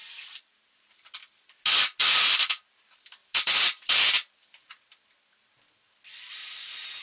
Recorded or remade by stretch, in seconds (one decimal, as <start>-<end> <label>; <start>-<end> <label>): 0.0-2.0 recorded; 2.0-2.5 remade; 2.5-7.0 recorded